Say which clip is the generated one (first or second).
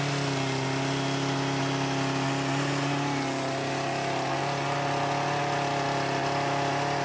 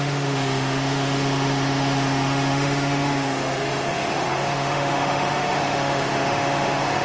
second